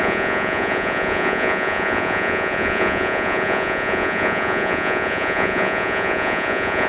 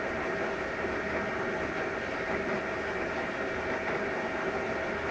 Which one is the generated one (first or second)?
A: first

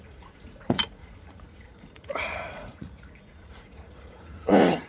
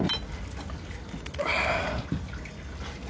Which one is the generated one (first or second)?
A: first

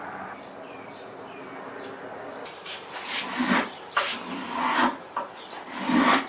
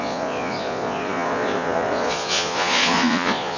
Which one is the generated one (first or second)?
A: second